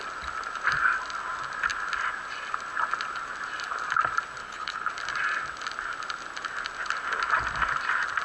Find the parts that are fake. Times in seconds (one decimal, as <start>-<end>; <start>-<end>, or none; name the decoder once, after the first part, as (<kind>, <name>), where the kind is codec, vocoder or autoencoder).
4.4-4.9 (codec, HILCodec)